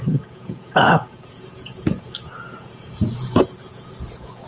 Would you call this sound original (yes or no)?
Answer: no